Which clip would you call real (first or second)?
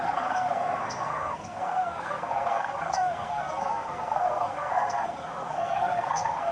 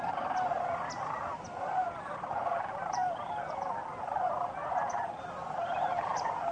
second